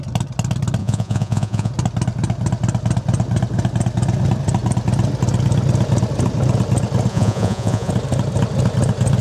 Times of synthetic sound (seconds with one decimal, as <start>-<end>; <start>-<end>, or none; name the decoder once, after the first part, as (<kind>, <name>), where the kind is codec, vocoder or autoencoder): 0.8-1.7 (vocoder, Vocos); 7.1-7.9

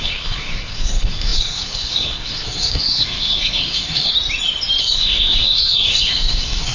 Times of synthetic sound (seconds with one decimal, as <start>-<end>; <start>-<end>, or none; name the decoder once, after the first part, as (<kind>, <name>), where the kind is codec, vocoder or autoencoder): 0.0-4.1 (codec, SNAC); 4.8-6.7

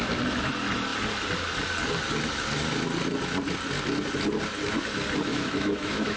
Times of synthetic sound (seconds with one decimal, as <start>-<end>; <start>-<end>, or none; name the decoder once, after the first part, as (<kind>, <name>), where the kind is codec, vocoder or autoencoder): 5.3-6.2 (autoencoder, DAC-VAE)

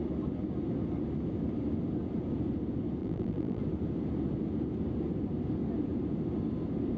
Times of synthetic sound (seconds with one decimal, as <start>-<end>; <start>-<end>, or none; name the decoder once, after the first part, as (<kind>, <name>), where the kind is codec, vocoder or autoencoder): 3.0-3.6 (vocoder, BigVGAN v2)

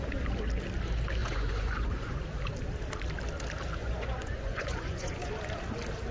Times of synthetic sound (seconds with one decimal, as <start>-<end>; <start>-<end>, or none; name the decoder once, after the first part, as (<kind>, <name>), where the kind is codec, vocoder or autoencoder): 1.2-2.2 (vocoder, Vocos); 3.8-5.3

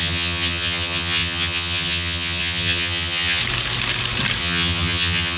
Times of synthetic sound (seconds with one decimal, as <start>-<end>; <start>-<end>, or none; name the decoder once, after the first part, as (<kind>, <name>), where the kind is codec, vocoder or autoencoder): 0.0-3.4 (vocoder, HiFi-GAN); 4.4-5.4

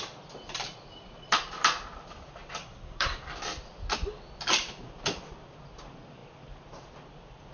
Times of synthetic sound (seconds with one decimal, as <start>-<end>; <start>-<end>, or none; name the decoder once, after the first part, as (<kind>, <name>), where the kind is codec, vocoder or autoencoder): 2.6-3.2 (codec, SNAC)

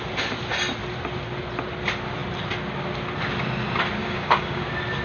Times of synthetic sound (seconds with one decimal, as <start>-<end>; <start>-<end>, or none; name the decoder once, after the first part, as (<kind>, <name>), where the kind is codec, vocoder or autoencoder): 4.0-4.6 (codec, DAC)